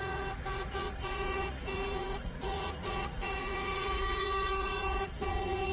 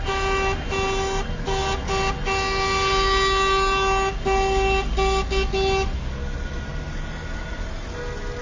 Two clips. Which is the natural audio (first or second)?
second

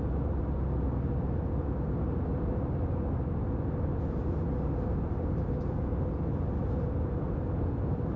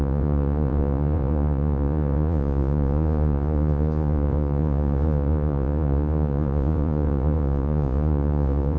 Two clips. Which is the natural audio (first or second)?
first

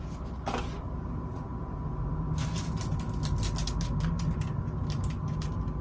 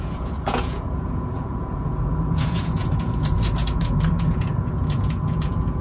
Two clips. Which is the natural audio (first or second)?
first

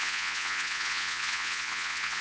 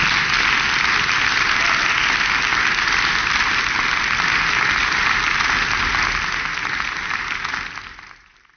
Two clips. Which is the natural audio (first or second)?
second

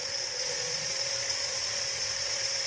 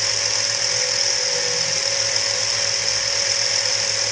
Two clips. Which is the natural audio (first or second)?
second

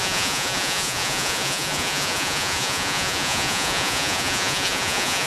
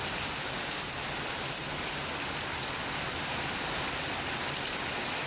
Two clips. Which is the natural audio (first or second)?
second